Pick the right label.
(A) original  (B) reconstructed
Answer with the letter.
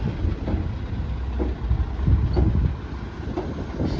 A